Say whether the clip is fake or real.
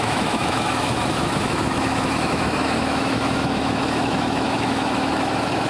fake